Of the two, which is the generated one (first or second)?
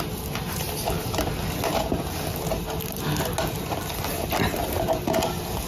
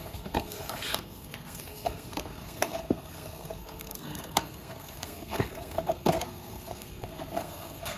second